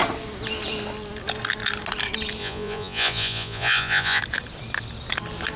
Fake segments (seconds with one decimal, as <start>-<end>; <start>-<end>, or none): 2.4-4.2